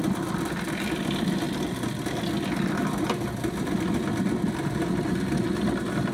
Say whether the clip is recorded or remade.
recorded